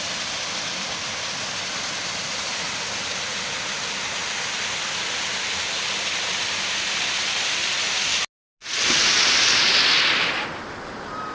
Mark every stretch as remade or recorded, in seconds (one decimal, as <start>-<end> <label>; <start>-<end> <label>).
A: 0.0-11.3 recorded